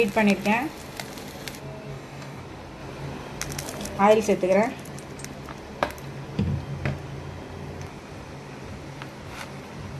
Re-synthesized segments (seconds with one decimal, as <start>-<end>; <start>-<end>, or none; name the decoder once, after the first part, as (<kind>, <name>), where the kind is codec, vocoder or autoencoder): 1.9-2.4 (codec, DAC)